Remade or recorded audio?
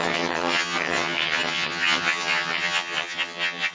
remade